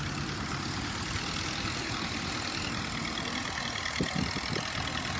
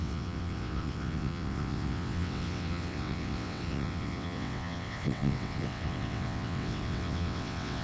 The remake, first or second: second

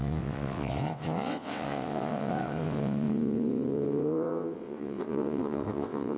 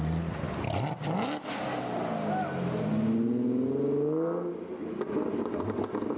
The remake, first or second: first